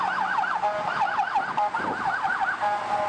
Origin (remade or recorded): recorded